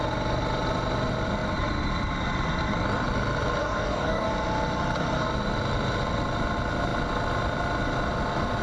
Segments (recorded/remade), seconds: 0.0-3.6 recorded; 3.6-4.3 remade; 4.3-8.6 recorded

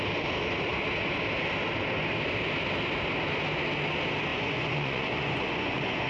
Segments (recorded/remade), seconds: 0.0-4.3 recorded; 4.3-6.1 remade

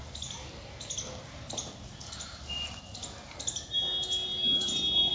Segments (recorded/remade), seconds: 0.0-4.3 recorded; 4.3-5.1 remade

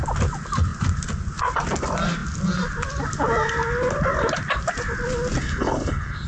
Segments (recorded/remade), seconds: 0.0-5.4 recorded; 5.4-6.3 remade

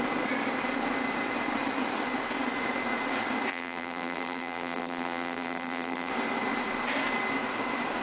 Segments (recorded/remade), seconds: 0.0-3.5 recorded; 3.5-6.1 remade; 6.1-8.0 recorded

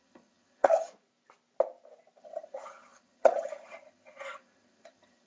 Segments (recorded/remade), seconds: 0.0-0.9 remade; 0.9-2.2 recorded; 2.2-5.3 remade

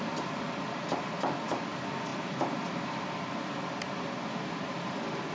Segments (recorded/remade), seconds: 0.0-5.3 recorded